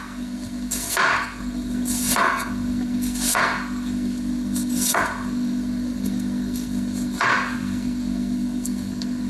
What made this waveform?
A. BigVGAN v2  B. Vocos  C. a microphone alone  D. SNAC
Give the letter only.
D